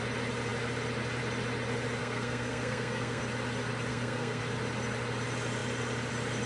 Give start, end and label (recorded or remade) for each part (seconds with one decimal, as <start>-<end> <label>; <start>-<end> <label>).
0.0-2.0 recorded; 2.0-3.2 remade; 3.2-3.9 recorded; 3.9-4.4 remade; 4.4-6.5 recorded